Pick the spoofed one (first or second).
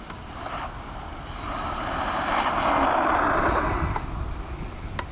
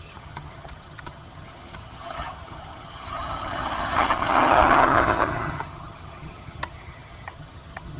second